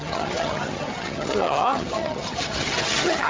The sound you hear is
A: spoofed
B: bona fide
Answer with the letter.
A